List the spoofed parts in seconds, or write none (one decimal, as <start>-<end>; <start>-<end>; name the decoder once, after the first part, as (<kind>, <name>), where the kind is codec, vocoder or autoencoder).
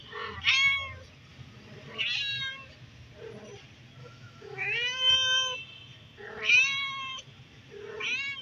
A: 4.0-5.1 (autoencoder, DAC-VAE)